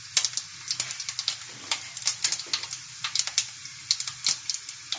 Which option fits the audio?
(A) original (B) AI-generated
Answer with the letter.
A